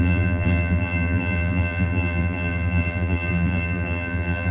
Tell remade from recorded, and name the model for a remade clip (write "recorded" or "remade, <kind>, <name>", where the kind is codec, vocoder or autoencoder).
remade, vocoder, BigVGAN v2